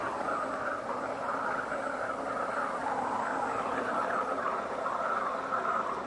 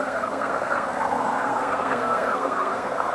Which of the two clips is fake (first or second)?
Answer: second